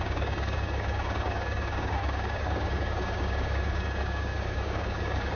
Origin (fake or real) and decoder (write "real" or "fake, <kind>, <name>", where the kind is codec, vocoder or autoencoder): fake, codec, DAC